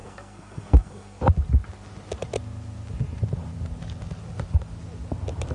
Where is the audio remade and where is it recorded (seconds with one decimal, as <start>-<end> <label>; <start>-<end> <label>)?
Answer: 0.0-1.2 remade; 1.2-5.5 recorded